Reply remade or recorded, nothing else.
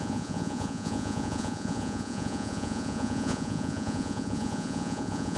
remade